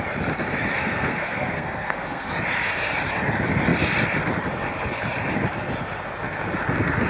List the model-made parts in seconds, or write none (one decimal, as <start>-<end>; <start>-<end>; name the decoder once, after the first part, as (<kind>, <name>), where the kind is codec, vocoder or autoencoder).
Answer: 0.7-2.3 (codec, SNAC)